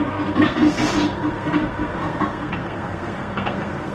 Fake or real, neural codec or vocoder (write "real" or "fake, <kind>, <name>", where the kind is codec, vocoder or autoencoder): fake, codec, SNAC